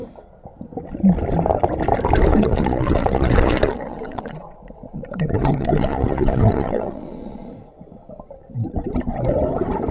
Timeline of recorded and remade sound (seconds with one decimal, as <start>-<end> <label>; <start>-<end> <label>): 0.0-2.3 recorded; 2.3-7.5 remade; 7.5-9.9 recorded